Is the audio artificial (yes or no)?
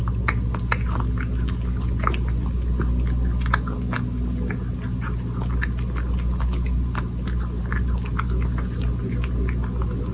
no